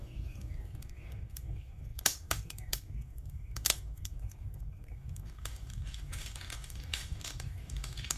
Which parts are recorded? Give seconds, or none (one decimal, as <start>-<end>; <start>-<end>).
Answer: none